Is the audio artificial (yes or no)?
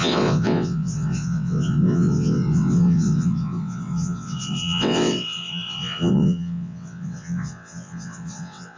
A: yes